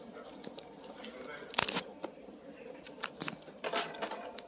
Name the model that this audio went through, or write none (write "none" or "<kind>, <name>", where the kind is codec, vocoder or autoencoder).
none